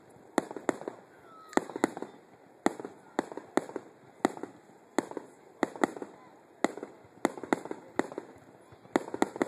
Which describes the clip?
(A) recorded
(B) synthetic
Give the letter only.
A